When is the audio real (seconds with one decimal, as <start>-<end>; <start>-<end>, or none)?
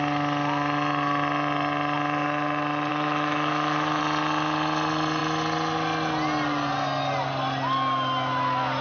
0.0-2.9; 4.0-8.8